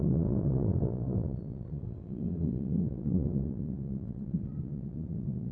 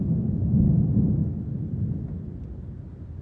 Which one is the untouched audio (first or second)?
second